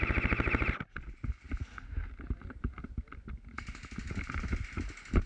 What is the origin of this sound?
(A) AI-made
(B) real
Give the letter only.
B